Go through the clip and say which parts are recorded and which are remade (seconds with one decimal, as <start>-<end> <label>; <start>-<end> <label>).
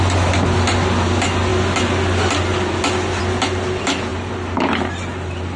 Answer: 0.0-5.6 recorded